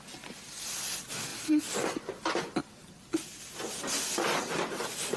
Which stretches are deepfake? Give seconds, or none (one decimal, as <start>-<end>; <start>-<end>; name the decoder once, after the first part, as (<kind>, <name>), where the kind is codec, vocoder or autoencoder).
none